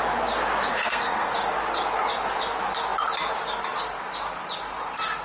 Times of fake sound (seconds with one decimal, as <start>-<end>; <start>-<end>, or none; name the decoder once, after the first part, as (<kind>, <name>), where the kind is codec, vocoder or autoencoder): 0.7-1.3 (codec, SNAC)